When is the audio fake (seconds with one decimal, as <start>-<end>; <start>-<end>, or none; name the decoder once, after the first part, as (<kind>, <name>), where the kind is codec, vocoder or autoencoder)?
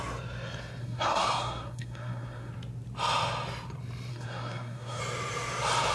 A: 0.8-2.5 (codec, SNAC); 4.1-5.0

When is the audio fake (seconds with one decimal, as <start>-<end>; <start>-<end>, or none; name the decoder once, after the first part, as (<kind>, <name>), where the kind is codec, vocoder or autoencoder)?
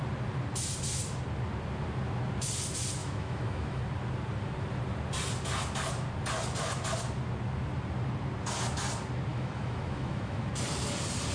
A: 3.0-3.8 (autoencoder, DAC-VAE); 9.3-10.5